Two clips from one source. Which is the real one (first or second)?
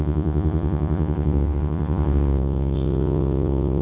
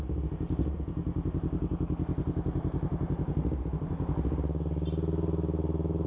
second